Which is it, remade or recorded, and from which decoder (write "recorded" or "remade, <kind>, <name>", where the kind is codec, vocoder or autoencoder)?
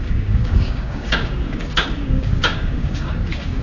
remade, codec, DAC